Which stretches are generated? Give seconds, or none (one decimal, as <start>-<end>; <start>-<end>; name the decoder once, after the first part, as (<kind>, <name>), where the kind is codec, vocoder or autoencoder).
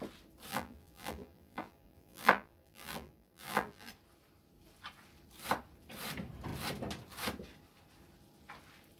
0.5-3.9 (vocoder, BigVGAN v2)